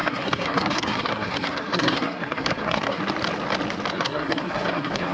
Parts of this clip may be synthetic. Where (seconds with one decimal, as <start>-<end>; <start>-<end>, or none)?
0.0-3.0; 3.9-5.1